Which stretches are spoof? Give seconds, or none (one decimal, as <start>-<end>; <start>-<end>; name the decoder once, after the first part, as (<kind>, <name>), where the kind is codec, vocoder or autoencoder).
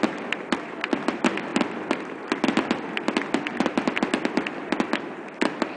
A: none